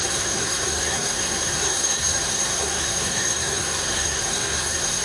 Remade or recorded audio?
remade